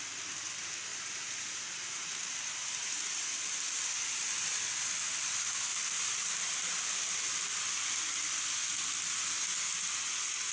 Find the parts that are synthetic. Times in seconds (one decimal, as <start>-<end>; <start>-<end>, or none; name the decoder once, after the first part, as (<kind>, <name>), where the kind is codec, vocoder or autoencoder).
0.9-2.7 (vocoder, BigVGAN v2); 5.7-7.4